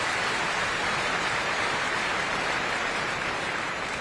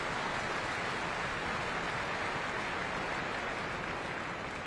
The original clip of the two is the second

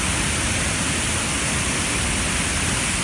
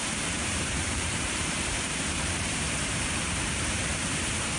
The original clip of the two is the first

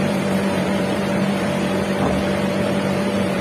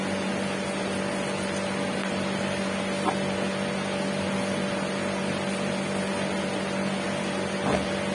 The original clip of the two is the second